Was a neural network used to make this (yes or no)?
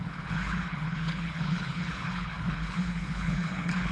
yes